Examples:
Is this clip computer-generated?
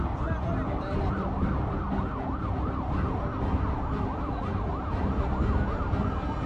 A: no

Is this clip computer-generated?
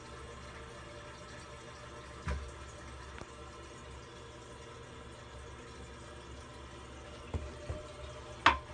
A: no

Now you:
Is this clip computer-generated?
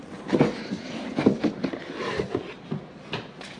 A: no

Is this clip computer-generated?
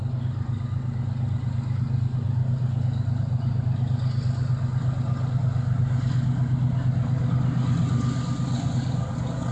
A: no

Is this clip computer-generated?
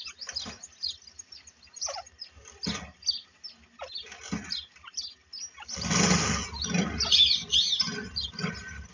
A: no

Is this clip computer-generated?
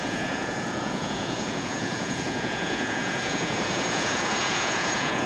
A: yes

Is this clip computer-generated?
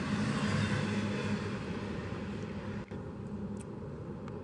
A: no